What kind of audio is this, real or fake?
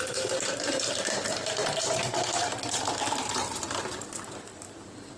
fake